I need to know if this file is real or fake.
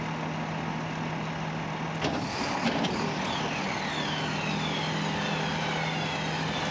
real